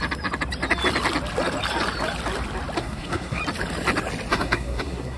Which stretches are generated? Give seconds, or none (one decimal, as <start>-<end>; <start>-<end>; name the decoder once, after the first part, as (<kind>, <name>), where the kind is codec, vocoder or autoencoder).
2.8-3.4 (codec, SNAC); 4.3-5.2